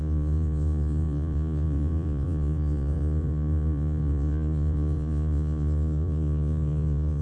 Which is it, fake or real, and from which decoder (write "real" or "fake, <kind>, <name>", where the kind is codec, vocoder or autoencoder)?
fake, vocoder, Vocos